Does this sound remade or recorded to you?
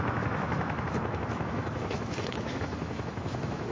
remade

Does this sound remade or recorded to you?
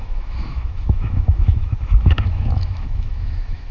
remade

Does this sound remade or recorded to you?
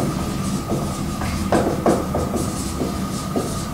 recorded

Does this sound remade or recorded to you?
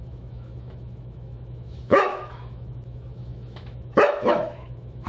remade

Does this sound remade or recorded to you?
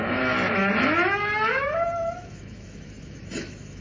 remade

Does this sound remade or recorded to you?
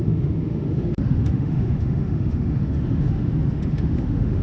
remade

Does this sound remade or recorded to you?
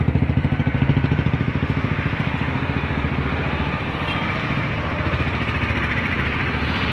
recorded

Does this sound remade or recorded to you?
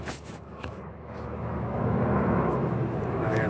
remade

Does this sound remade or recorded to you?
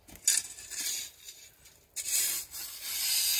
recorded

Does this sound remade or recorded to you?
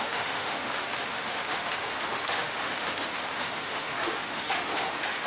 remade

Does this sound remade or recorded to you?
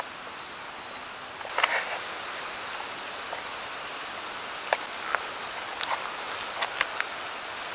recorded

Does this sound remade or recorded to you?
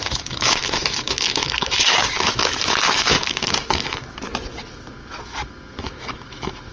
remade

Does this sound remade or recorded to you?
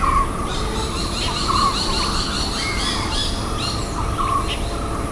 recorded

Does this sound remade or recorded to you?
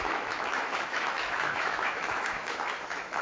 remade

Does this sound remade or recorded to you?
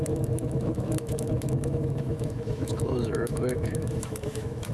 remade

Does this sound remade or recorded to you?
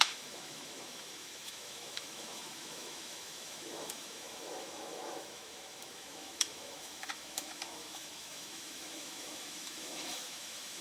remade